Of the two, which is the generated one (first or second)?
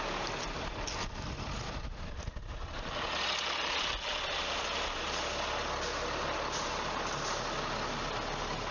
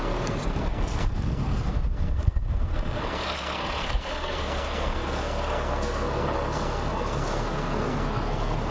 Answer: second